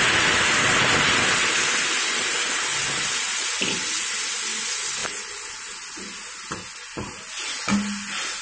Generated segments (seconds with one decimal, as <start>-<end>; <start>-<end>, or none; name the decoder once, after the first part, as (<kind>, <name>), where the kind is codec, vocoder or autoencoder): none